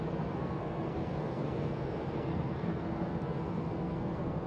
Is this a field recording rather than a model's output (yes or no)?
no